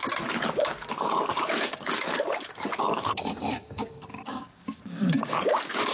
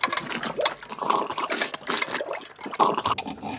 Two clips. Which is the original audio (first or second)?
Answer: second